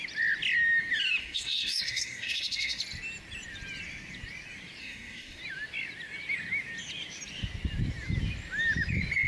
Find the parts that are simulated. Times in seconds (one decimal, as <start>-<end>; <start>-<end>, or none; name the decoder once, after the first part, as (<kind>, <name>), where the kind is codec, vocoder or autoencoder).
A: 1.2-2.8 (codec, SNAC); 4.8-5.4